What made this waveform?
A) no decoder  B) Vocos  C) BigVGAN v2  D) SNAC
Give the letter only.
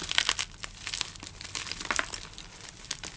C